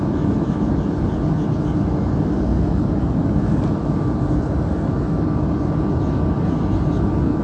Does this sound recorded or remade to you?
recorded